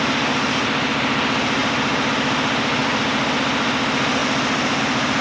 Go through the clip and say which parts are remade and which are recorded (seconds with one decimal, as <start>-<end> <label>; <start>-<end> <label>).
0.0-5.2 recorded